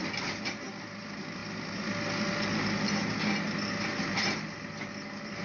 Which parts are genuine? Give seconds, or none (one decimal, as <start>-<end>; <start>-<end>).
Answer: 0.0-5.4